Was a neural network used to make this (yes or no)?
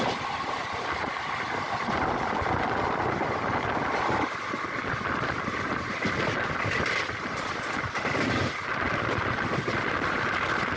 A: no